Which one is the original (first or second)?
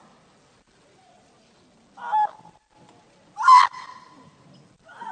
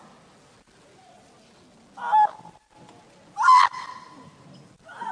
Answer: second